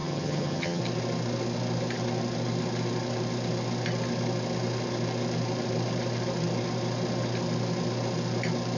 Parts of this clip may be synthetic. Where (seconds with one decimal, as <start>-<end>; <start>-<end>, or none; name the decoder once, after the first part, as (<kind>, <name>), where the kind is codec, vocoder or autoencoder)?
0.0-0.8 (vocoder, HiFi-GAN)